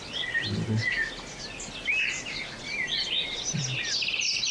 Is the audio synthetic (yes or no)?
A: no